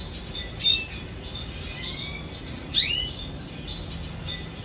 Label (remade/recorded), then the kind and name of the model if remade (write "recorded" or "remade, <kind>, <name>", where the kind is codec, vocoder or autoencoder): recorded